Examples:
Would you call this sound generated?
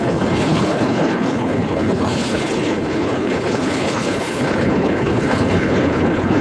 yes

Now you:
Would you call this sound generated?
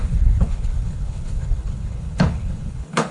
yes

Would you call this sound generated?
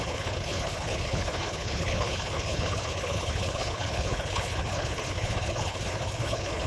yes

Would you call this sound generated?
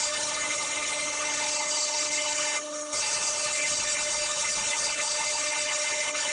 yes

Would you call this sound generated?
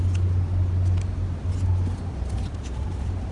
no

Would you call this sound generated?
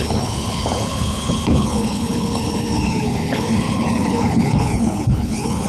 yes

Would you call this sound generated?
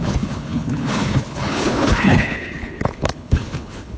yes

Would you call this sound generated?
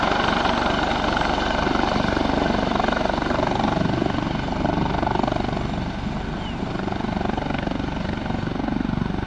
no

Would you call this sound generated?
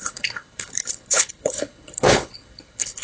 yes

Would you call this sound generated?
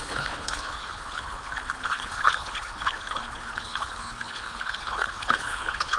yes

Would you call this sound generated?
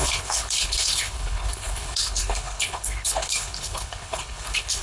yes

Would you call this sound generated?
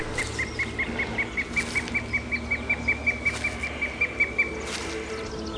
no